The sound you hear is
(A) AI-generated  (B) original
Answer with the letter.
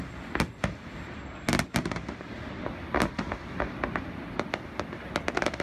B